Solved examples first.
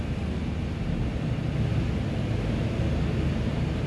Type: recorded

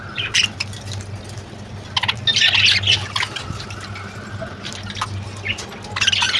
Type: recorded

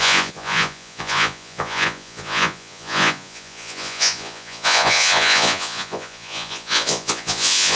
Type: remade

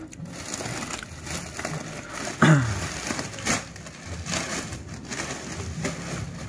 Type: recorded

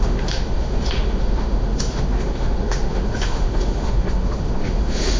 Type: remade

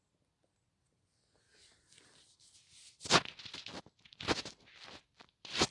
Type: recorded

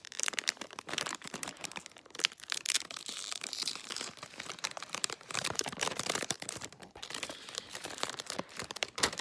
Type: remade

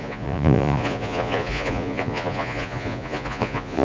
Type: remade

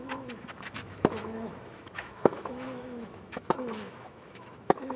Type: remade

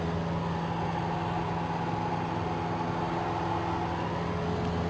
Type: recorded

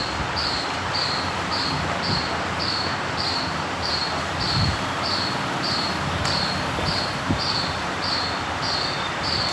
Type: remade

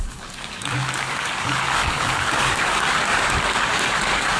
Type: remade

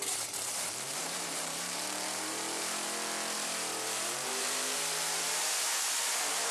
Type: remade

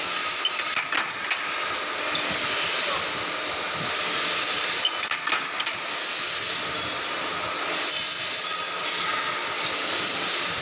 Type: recorded